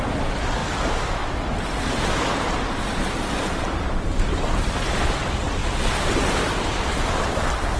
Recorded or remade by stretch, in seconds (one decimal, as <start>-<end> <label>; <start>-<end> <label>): 0.0-7.8 recorded